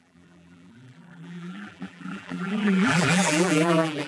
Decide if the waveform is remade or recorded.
remade